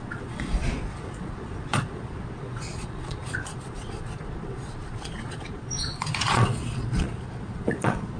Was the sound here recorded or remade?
remade